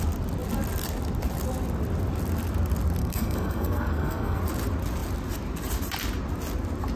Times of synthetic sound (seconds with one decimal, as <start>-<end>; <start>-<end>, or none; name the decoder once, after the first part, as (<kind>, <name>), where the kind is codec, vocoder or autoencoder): 3.0-4.4 (codec, SNAC)